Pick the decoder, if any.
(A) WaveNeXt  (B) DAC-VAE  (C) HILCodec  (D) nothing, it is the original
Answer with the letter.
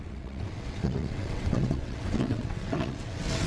A